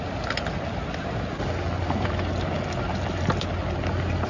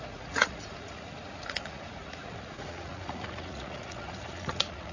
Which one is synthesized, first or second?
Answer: second